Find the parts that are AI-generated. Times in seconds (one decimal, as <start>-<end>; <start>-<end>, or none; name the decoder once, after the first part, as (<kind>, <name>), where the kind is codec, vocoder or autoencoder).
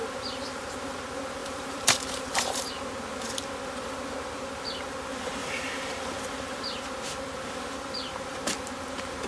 1.4-2.7 (vocoder, BigVGAN v2); 5.4-6.0